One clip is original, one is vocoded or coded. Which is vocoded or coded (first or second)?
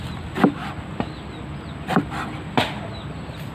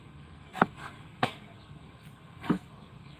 second